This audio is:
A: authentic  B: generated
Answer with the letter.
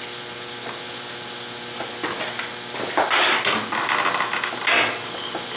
A